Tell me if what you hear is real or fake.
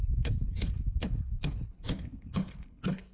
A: fake